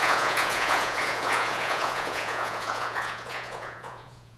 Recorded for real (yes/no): no